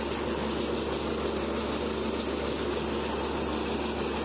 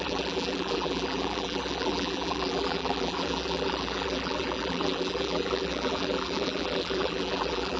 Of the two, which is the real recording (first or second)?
first